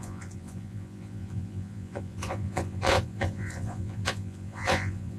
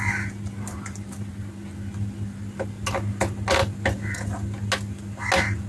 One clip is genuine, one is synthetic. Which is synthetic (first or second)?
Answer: first